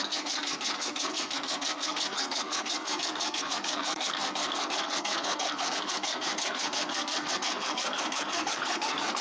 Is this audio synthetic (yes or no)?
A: yes